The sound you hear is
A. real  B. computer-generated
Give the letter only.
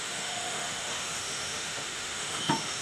B